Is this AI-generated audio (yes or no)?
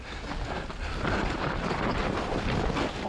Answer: no